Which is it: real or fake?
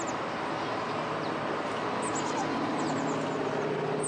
real